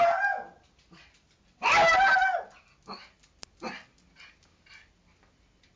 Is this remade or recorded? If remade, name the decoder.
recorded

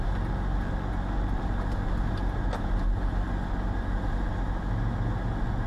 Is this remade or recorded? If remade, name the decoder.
recorded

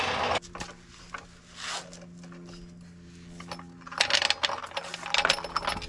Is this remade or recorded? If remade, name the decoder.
recorded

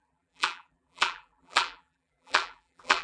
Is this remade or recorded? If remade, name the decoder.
remade, vocoder, BigVGAN v2